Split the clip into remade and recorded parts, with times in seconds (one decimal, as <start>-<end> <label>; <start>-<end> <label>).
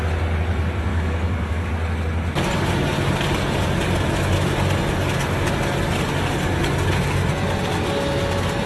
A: 0.0-0.9 recorded; 0.9-1.7 remade; 1.7-8.7 recorded